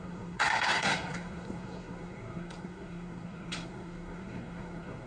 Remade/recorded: remade